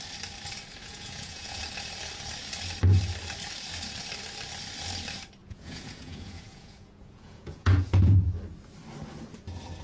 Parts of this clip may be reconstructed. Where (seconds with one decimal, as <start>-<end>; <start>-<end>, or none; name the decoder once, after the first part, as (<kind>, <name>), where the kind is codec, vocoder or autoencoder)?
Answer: 0.8-1.6 (vocoder, Vocos); 5.4-8.2